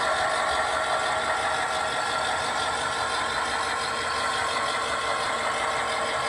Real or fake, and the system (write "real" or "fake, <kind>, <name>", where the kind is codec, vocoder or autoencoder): real